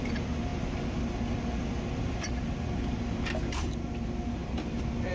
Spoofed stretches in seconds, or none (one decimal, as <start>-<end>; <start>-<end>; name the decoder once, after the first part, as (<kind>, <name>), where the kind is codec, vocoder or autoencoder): none